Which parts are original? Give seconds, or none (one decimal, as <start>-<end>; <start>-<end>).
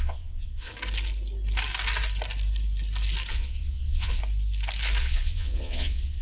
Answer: 0.7-3.3; 4.2-5.0